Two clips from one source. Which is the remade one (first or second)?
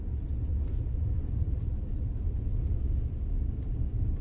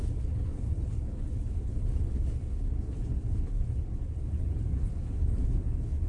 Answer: second